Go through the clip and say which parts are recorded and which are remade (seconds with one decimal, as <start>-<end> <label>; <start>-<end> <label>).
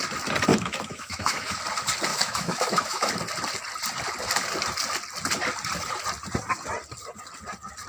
0.0-0.5 recorded; 0.5-1.6 remade; 1.6-2.1 recorded; 2.1-3.1 remade; 3.1-7.9 recorded